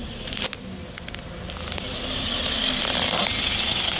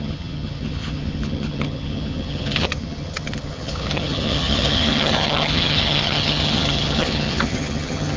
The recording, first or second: first